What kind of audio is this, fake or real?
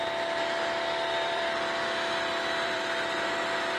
fake